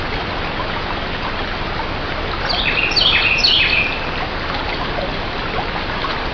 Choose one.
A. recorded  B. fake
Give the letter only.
A